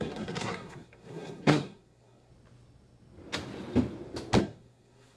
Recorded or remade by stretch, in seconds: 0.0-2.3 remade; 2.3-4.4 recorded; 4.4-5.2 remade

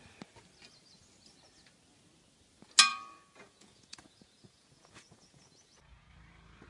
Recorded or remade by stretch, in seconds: 0.0-2.9 recorded; 2.9-6.1 remade; 6.1-6.7 recorded

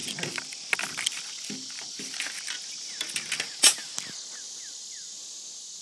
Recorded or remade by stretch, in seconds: 0.0-5.8 recorded

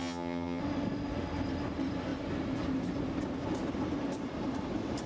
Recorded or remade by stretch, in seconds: 0.0-0.6 remade; 0.6-5.1 recorded

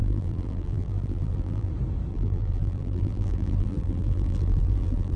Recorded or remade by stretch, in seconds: 0.0-1.7 remade; 1.7-2.1 recorded; 2.1-5.2 remade